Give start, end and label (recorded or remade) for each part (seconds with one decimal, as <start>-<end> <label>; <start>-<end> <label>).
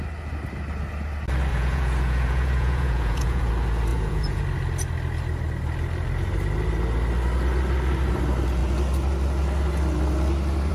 0.0-1.5 recorded; 1.5-3.5 remade; 3.5-3.9 recorded; 3.9-4.4 remade; 4.4-10.7 recorded